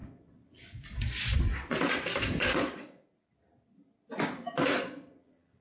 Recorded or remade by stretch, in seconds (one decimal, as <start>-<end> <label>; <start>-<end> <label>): 0.0-3.0 remade; 3.0-4.6 recorded; 4.6-5.6 remade